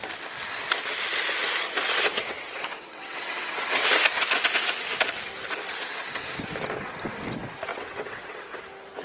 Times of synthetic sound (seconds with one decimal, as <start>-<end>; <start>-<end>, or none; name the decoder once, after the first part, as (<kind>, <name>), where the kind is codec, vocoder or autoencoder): 2.1-3.8 (vocoder, WaveNeXt); 7.7-8.6